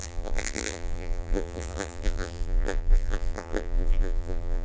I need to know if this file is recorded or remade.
remade